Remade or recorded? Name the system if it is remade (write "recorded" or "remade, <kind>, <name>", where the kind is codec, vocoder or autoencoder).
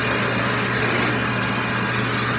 recorded